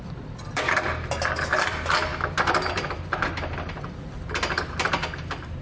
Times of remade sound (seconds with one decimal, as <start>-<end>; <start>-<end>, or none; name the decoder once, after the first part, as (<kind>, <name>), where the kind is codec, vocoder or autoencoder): 0.0-5.6 (vocoder, BigVGAN v2)